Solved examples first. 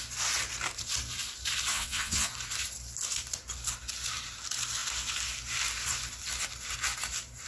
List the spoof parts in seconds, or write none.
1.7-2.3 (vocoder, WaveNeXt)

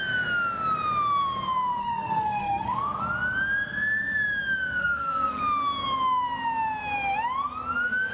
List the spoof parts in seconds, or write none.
1.8-3.0 (codec, SNAC); 4.8-5.4

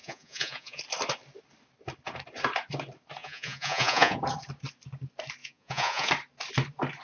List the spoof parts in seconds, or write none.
0.0-0.8 (vocoder, Vocos); 3.2-4.2; 5.4-6.1

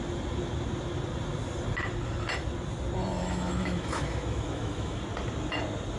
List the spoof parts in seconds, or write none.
3.2-5.0 (autoencoder, DAC-VAE)

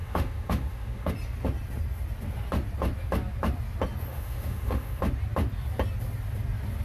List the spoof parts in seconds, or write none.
0.0-1.1 (autoencoder, DAC-VAE); 4.1-5.0

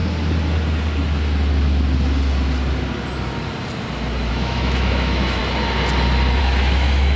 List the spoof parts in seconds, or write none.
4.3-5.4 (autoencoder, DAC-VAE); 6.4-7.2

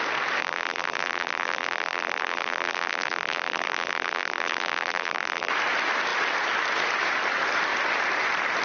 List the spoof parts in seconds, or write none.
0.4-5.5 (vocoder, BigVGAN v2)